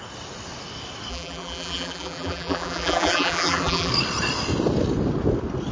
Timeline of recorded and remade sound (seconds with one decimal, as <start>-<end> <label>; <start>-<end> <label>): 0.0-1.1 recorded; 1.1-3.9 remade; 3.9-5.7 recorded